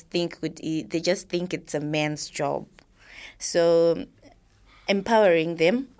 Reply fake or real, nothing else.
real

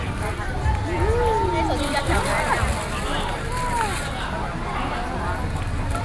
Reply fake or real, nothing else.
real